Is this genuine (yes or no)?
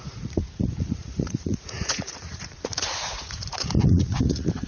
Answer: no